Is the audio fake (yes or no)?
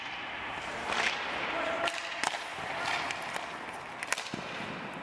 no